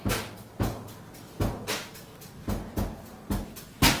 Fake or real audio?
real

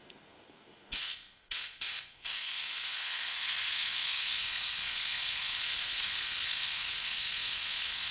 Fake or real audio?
fake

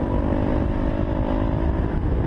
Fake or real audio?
fake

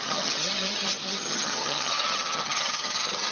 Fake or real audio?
fake